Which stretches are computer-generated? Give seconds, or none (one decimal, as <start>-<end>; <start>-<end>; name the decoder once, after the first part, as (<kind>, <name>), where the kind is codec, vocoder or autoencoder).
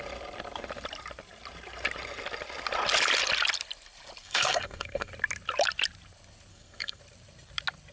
4.2-5.1 (codec, SNAC); 6.5-7.0